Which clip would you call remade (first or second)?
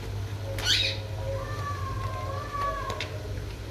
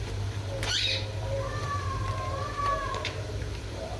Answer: second